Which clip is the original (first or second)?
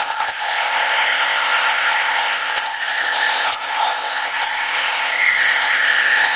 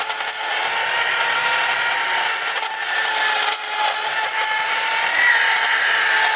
second